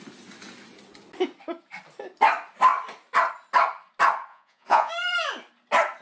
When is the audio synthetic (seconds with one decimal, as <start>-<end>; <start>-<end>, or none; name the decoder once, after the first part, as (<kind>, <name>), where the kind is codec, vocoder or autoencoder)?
4.3-4.9 (vocoder, Vocos)